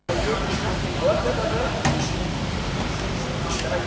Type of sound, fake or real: real